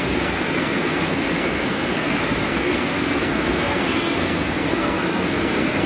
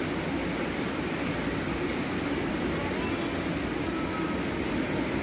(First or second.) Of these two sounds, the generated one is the first